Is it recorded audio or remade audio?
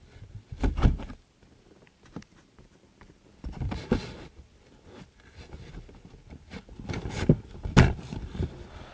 recorded